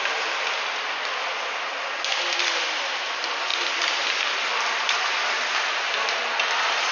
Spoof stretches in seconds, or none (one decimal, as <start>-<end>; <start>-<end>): none